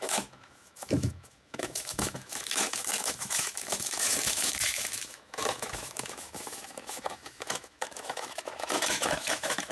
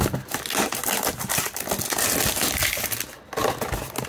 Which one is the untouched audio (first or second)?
second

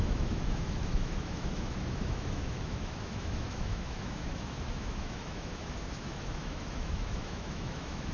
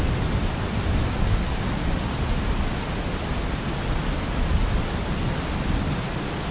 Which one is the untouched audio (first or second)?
second